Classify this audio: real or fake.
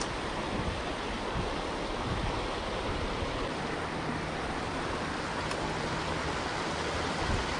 real